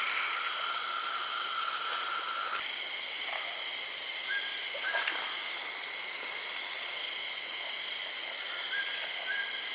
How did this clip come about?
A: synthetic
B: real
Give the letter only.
B